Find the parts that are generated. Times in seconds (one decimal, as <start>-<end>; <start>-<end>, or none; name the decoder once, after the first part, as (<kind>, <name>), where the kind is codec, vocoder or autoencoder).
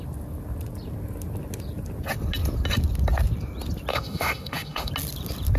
3.9-4.9 (autoencoder, DAC-VAE)